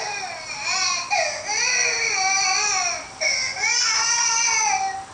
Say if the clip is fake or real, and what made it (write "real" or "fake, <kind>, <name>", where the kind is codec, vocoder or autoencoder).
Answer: real